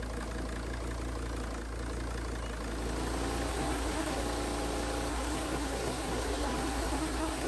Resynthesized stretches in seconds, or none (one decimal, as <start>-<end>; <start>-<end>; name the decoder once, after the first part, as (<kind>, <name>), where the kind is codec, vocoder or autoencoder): 3.5-4.2 (codec, SNAC); 5.1-7.5